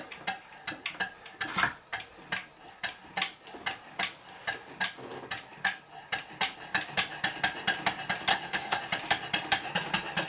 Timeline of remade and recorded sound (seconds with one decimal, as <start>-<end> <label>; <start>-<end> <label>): 0.0-8.3 recorded; 8.3-8.8 remade; 8.8-10.3 recorded